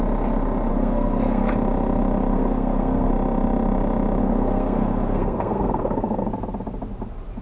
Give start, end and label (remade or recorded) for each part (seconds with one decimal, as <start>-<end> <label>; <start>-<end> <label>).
0.0-0.7 recorded; 0.7-1.5 remade; 1.5-2.3 recorded; 2.3-3.1 remade; 3.1-4.2 recorded; 4.2-6.3 remade; 6.3-7.4 recorded